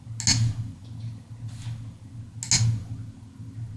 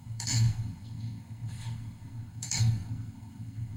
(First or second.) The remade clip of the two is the second